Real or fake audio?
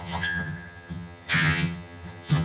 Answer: fake